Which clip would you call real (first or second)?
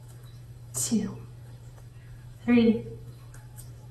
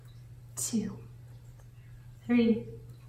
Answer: second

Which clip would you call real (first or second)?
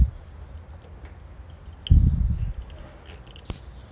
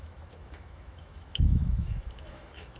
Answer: first